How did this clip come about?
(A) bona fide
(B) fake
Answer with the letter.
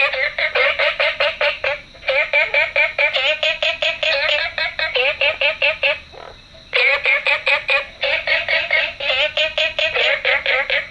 A